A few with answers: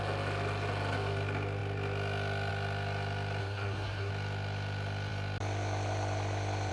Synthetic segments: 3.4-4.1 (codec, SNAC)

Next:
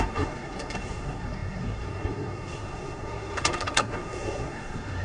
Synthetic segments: 0.0-5.0 (codec, SNAC)

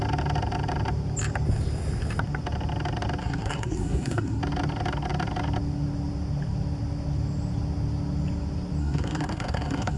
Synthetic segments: 3.2-4.4 (codec, SNAC); 8.8-10.0

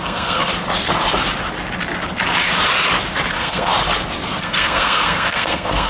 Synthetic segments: 0.0-0.5 (codec, SNAC); 3.3-3.7; 4.4-5.9

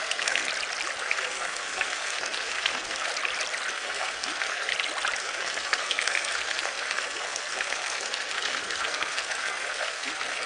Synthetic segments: 0.0-0.5 (codec, SNAC); 1.0-3.1; 3.7-4.7; 5.2-10.5

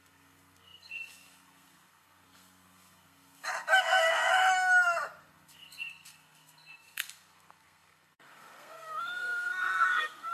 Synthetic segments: 0.0-4.3 (codec, SNAC); 5.2-10.3

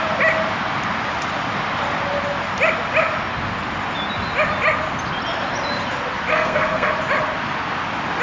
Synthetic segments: 6.3-6.9 (codec, SNAC)